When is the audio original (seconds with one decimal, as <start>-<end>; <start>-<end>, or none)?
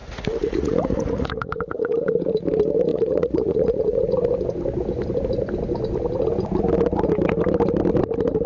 2.2-2.9; 4.0-8.5